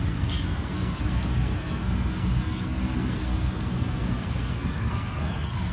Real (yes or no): no